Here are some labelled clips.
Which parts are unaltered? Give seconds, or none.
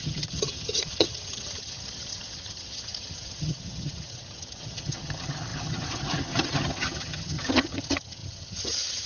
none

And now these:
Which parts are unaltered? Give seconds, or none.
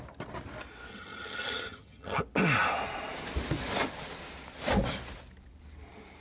0.0-0.9; 2.2-6.2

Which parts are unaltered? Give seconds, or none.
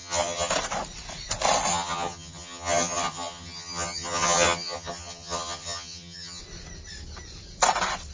0.5-1.7; 6.4-8.1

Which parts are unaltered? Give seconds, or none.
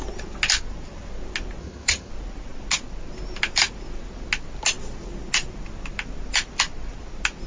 0.0-1.6; 2.1-7.5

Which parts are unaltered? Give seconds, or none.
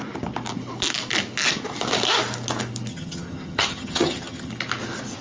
0.0-2.9; 4.5-5.2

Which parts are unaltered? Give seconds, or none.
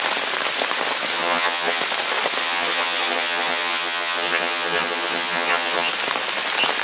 0.0-1.1; 1.8-2.4; 5.9-6.8